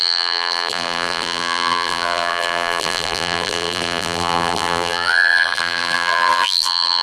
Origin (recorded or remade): remade